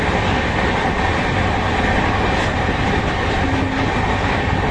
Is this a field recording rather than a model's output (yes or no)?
yes